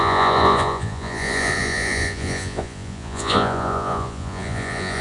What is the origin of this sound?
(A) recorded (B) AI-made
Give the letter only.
B